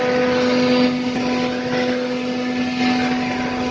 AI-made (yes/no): no